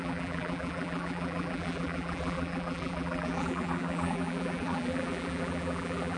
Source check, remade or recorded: remade